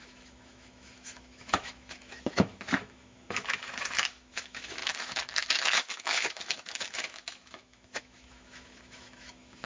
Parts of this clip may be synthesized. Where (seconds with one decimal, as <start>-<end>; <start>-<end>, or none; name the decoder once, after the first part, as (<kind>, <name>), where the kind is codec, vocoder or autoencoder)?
0.0-9.7 (autoencoder, DAC-VAE)